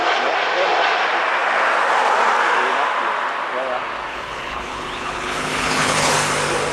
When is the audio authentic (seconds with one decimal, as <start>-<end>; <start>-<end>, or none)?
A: 0.0-4.1; 6.1-6.7